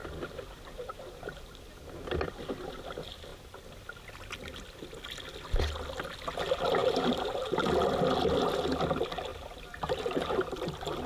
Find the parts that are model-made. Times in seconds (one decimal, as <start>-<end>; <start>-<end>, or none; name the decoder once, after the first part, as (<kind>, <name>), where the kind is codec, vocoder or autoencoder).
0.0-1.5 (vocoder, BigVGAN v2); 6.8-7.6; 9.3-10.5